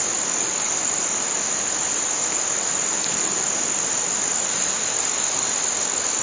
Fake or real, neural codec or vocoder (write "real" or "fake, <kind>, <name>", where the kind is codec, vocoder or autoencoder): real